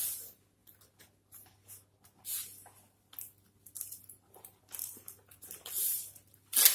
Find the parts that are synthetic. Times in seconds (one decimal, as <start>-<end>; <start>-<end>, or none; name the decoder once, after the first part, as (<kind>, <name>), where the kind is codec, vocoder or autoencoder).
none